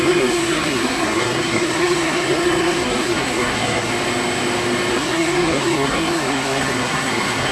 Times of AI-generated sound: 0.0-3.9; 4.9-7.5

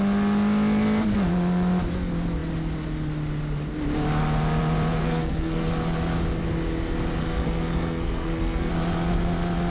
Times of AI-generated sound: 5.0-5.7; 7.2-8.7

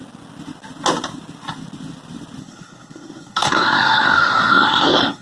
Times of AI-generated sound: 2.4-5.2

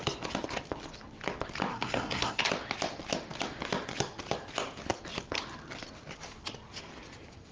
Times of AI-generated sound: 1.7-2.4